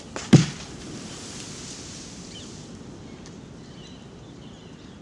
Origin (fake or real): fake